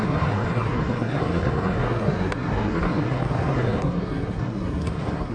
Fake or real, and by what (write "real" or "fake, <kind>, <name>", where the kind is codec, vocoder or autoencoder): fake, codec, SNAC